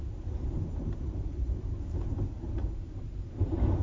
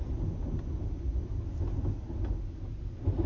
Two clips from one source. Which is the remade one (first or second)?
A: first